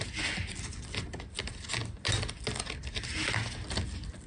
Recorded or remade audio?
recorded